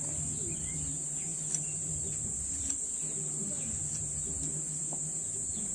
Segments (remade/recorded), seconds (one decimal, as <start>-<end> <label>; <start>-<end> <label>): 0.0-5.7 recorded